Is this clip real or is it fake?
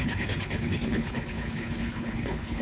fake